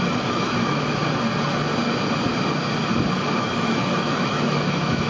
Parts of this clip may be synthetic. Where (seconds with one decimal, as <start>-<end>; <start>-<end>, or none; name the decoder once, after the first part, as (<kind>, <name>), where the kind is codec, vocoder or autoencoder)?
0.0-1.0 (autoencoder, DAC-VAE); 3.4-5.1